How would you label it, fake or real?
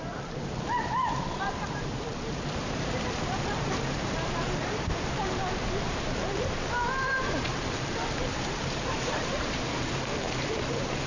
fake